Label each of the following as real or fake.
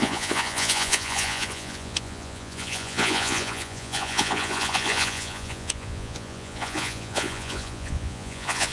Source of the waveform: fake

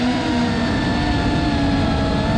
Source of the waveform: real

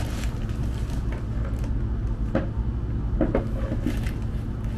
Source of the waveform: real